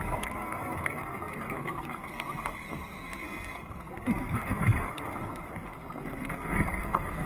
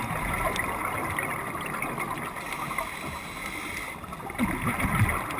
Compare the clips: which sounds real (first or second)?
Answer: second